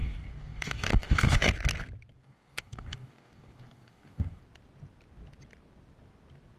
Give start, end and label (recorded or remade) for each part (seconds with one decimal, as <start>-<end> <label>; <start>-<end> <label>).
0.0-1.5 remade; 1.5-2.2 recorded; 2.2-4.4 remade; 4.4-6.6 recorded